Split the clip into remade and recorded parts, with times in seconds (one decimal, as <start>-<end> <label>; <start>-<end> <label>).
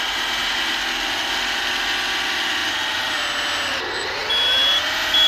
0.0-5.3 recorded